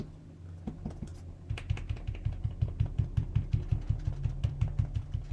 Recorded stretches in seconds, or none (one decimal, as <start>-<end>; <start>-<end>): 0.0-5.3